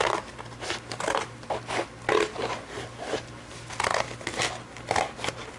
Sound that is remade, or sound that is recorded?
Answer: recorded